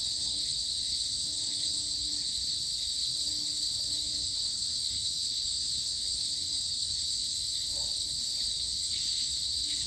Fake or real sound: fake